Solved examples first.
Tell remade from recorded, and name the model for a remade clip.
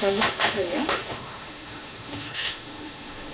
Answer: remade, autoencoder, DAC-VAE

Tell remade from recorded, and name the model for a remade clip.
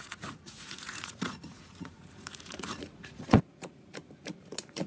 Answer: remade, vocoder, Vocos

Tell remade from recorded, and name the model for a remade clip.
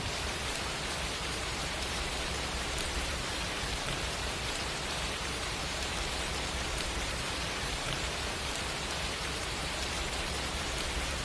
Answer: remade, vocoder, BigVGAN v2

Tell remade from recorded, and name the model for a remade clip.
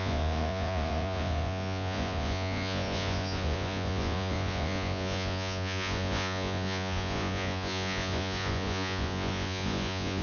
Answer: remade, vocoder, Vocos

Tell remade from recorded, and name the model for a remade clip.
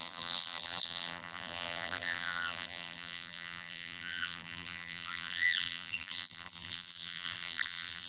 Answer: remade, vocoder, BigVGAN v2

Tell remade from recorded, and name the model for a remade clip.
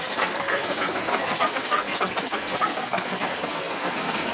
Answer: remade, codec, SNAC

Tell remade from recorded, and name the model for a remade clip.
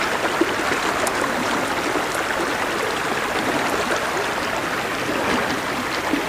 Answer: recorded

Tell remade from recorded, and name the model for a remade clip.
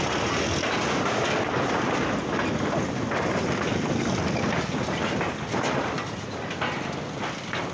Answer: recorded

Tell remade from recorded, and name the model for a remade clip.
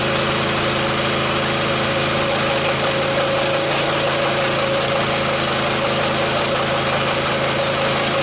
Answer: recorded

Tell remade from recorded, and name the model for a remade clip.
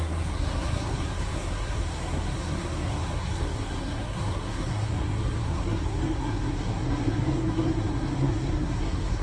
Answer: remade, codec, SNAC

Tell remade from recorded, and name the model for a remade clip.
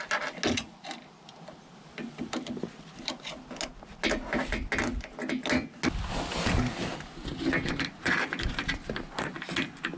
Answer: recorded